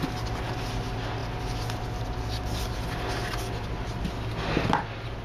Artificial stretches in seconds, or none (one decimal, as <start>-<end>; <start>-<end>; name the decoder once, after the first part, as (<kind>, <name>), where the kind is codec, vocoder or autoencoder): none